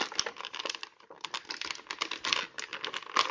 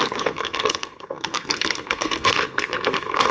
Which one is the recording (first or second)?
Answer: first